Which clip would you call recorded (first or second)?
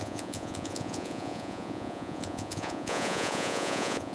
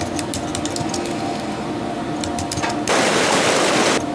second